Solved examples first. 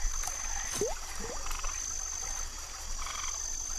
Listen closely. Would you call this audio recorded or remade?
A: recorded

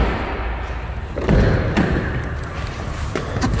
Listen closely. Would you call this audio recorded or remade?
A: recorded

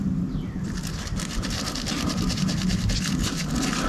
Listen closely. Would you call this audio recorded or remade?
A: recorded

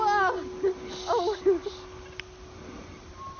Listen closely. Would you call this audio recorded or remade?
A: recorded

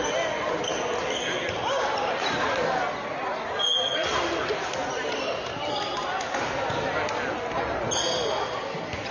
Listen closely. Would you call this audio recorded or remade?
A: recorded